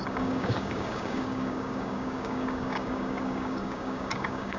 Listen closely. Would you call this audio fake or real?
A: fake